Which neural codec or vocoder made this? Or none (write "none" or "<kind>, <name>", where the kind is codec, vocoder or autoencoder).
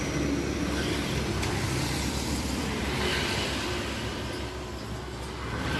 none